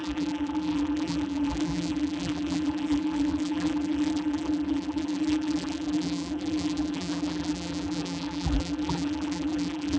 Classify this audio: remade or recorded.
remade